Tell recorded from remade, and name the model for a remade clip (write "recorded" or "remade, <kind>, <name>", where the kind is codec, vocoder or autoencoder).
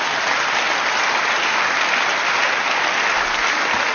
recorded